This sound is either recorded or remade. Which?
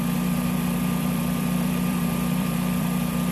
remade